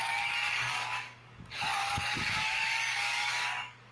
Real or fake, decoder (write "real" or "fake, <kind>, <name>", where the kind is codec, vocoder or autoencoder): fake, codec, DAC